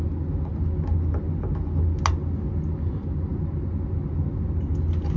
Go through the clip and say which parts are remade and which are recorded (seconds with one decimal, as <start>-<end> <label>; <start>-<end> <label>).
0.0-5.2 recorded